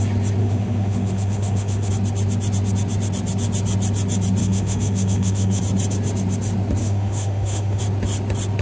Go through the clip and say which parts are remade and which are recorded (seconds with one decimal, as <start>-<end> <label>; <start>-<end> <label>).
0.0-0.4 recorded; 0.4-1.9 remade; 1.9-4.4 recorded; 4.4-5.6 remade; 5.6-6.8 recorded; 6.8-7.8 remade; 7.8-8.6 recorded